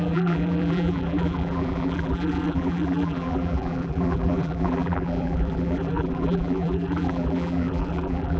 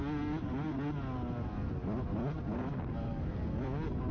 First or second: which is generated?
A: first